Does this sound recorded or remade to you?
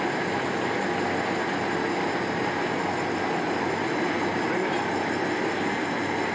recorded